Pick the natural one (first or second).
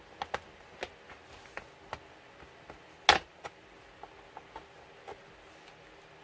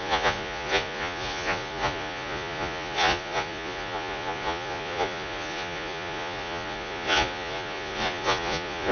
first